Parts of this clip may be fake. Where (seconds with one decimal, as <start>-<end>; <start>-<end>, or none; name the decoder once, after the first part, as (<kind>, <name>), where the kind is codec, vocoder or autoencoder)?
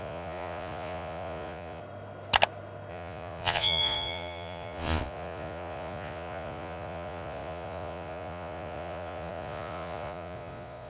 0.0-1.8 (vocoder, Vocos); 2.9-10.9